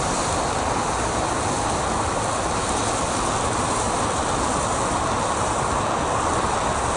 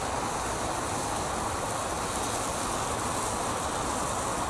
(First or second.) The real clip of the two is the second